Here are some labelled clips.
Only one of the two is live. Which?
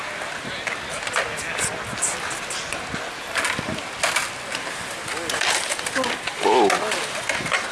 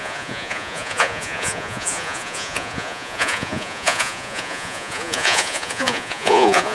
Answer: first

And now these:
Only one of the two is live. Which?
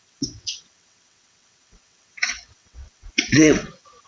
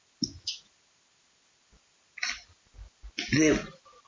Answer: second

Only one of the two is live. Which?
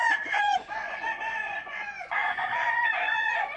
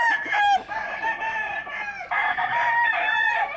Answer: second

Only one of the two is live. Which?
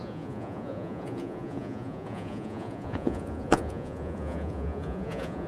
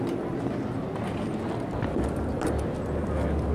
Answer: second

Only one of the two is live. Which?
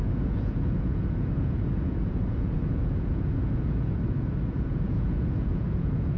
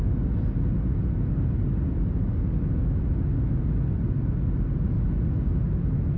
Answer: second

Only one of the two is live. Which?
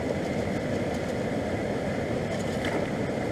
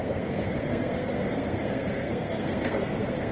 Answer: first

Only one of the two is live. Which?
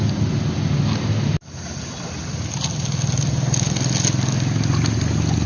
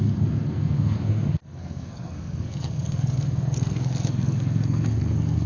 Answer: first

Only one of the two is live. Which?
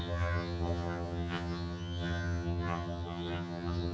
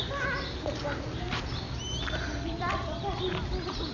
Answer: second